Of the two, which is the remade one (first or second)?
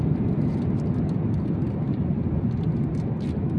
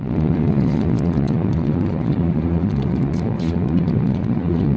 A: second